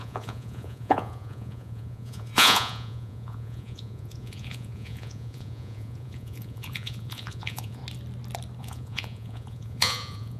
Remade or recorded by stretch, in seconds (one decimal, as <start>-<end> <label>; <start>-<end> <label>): 0.0-7.8 remade; 7.8-8.6 recorded; 8.6-10.4 remade